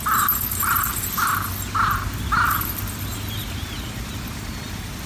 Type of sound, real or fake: real